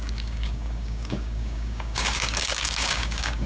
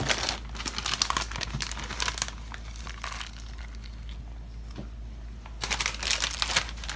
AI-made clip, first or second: first